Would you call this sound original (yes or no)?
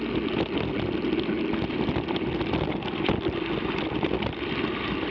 yes